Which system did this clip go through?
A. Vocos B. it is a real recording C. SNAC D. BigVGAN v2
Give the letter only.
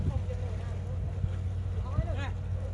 B